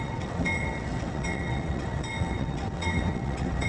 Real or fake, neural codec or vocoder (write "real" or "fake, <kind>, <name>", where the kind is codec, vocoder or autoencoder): fake, vocoder, WaveNeXt